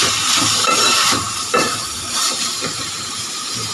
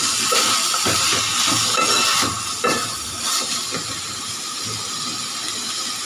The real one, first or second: second